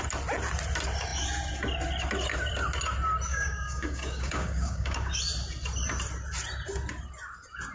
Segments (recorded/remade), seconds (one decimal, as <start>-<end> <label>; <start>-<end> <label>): 0.0-3.3 recorded; 3.3-5.2 remade; 5.2-7.7 recorded